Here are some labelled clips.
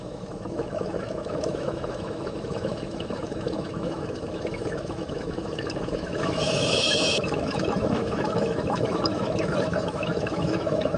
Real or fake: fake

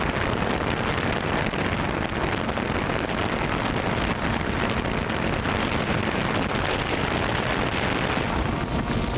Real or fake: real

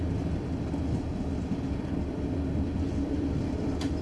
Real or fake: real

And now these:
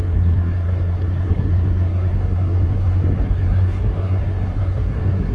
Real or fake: fake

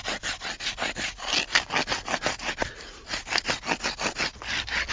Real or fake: real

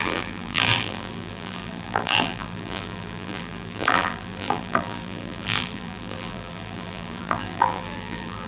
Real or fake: fake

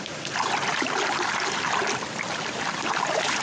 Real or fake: fake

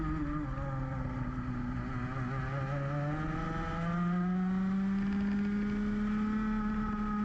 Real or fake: real